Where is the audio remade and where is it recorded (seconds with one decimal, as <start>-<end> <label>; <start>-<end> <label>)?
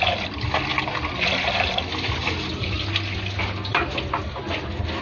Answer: 0.0-5.0 recorded